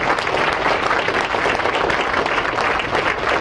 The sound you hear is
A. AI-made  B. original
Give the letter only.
B